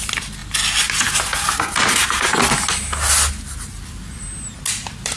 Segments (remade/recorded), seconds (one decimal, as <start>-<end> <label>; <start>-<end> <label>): 0.0-5.2 recorded